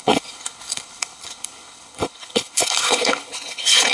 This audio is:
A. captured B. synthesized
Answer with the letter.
B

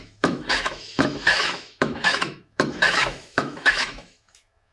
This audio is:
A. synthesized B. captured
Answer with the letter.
A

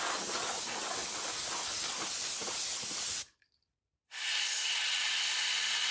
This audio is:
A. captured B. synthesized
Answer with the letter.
A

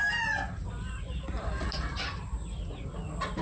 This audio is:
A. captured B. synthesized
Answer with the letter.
A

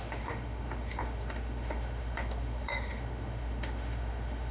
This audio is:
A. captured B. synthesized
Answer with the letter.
B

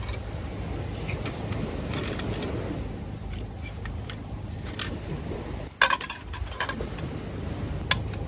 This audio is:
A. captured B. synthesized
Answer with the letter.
A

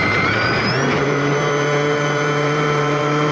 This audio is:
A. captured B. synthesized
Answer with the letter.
B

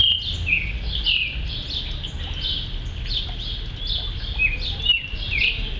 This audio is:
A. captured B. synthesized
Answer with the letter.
A